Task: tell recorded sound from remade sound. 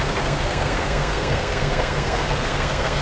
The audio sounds remade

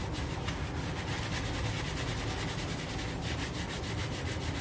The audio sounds recorded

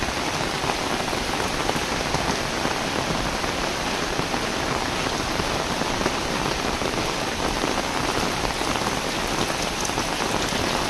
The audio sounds recorded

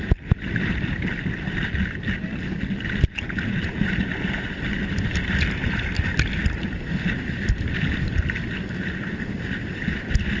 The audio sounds recorded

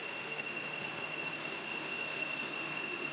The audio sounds remade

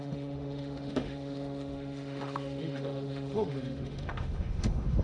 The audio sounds remade